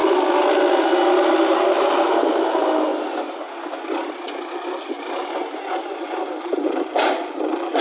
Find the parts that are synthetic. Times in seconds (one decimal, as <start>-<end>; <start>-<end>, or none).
1.2-2.9; 6.4-7.8